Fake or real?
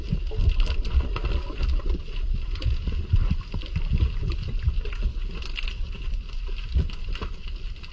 real